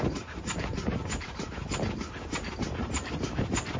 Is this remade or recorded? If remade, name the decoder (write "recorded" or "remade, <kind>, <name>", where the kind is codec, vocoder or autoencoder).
recorded